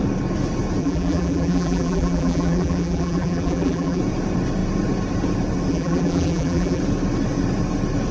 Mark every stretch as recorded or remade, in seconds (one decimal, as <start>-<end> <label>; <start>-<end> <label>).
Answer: 0.0-0.8 recorded; 0.8-4.0 remade; 4.0-5.7 recorded; 5.7-6.8 remade; 6.8-8.1 recorded